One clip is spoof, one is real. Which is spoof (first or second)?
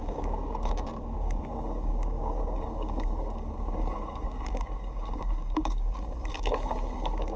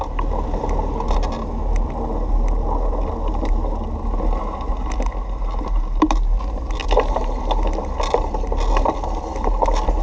first